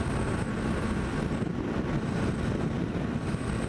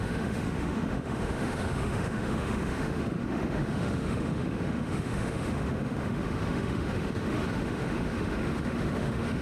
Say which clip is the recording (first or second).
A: first